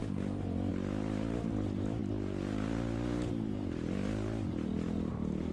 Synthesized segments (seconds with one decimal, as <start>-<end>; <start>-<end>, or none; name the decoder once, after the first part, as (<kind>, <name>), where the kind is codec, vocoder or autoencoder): none